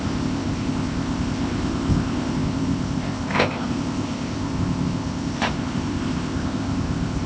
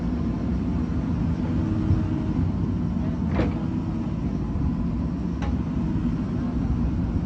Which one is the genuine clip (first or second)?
second